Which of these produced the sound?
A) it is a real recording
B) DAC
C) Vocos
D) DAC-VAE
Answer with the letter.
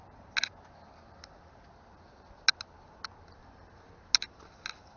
A